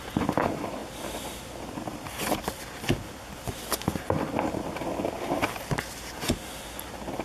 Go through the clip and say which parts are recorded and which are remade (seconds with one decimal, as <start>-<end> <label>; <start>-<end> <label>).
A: 0.0-7.2 recorded